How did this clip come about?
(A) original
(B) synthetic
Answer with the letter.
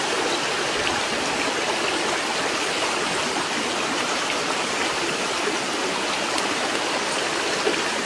A